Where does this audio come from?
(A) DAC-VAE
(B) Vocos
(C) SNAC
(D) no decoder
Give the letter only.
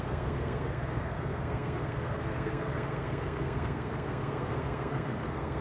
C